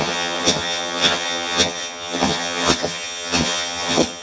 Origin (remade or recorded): remade